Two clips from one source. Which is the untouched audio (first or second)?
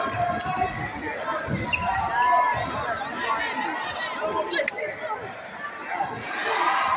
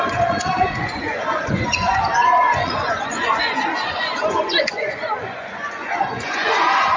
first